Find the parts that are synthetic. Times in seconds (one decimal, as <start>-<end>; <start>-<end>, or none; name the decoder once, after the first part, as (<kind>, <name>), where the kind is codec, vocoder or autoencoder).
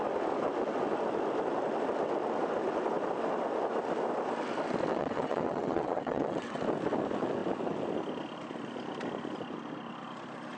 4.9-6.6 (vocoder, WaveNeXt)